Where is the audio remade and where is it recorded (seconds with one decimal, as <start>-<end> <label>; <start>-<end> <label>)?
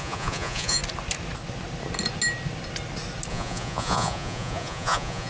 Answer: 0.0-0.8 remade; 0.8-3.3 recorded; 3.3-5.3 remade